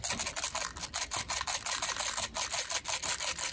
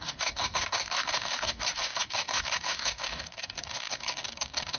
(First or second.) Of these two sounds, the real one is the first